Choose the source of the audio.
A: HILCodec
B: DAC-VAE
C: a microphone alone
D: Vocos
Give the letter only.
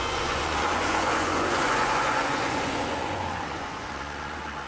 D